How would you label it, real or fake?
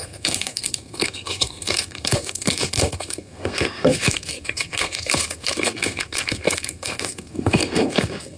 fake